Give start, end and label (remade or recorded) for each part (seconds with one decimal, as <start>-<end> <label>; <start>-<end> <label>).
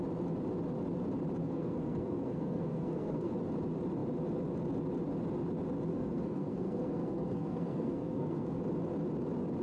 0.0-1.4 recorded; 1.4-3.3 remade; 3.3-5.9 recorded; 5.9-8.6 remade; 8.6-9.6 recorded